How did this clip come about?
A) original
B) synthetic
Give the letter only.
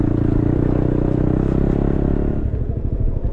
A